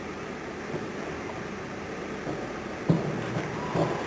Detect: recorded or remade recorded